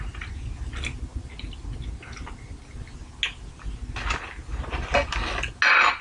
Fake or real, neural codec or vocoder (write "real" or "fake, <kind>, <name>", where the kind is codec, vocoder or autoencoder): real